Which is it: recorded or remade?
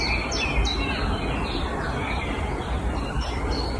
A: recorded